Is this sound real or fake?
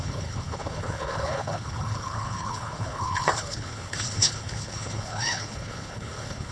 fake